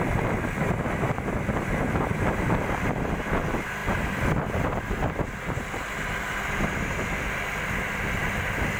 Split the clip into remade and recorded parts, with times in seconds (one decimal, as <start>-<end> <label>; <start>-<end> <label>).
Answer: 0.0-8.8 recorded